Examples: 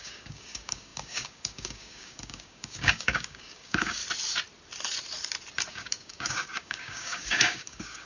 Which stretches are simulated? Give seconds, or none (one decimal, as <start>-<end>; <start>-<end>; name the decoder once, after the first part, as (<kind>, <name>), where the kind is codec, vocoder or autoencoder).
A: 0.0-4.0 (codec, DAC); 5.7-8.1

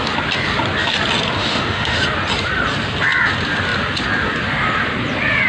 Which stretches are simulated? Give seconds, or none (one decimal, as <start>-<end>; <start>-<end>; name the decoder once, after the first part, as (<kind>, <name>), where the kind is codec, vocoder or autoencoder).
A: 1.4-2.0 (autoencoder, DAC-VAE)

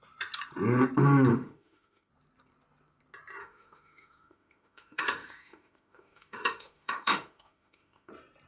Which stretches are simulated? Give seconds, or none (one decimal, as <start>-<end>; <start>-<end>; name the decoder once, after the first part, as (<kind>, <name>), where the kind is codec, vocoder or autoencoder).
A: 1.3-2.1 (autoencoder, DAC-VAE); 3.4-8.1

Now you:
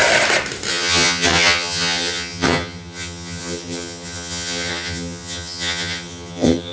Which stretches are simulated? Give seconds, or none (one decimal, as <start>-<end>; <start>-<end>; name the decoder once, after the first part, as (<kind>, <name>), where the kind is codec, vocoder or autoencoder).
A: 0.7-6.7 (vocoder, HiFi-GAN)

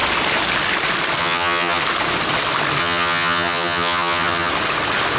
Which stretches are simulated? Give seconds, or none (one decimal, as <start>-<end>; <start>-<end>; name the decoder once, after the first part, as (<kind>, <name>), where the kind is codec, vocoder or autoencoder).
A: 1.2-1.8 (vocoder, HiFi-GAN); 2.8-4.5

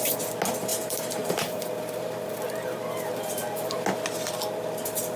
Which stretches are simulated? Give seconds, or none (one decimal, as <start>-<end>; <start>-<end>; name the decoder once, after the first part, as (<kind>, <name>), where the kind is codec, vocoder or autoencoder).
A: 0.7-3.8 (vocoder, BigVGAN v2)